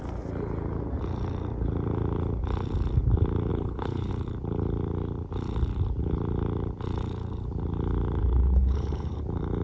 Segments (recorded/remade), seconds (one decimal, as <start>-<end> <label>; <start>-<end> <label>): 0.0-3.5 recorded; 3.5-4.1 remade; 4.1-8.2 recorded; 8.2-9.2 remade; 9.2-9.6 recorded